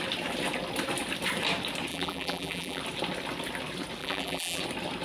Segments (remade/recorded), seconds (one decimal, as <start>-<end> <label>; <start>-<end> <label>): 0.0-1.9 recorded; 1.9-2.8 remade; 2.8-4.0 recorded; 4.0-4.6 remade; 4.6-5.0 recorded